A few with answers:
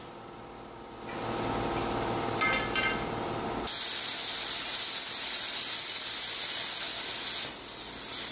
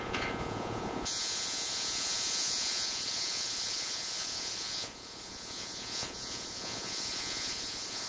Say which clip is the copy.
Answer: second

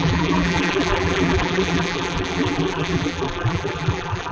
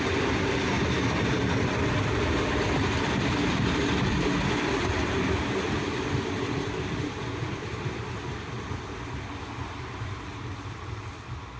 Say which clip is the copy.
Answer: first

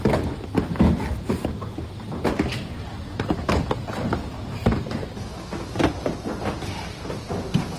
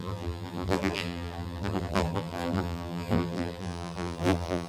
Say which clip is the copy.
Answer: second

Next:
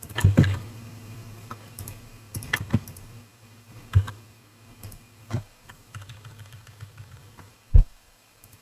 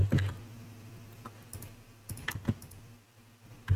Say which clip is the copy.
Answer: first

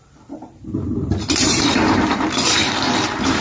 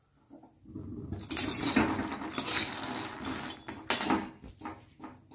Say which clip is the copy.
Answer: first